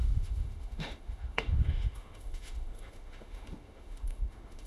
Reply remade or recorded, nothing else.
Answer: remade